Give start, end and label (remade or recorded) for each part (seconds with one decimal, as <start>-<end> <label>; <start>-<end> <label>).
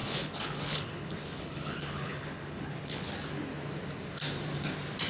0.0-3.1 remade; 3.1-5.1 recorded